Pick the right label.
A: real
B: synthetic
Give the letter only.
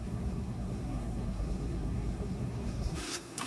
B